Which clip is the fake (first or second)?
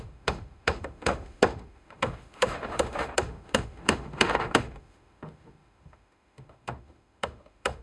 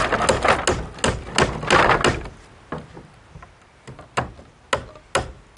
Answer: first